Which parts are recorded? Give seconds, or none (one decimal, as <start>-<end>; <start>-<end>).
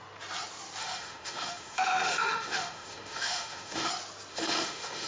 0.0-0.8; 3.9-4.3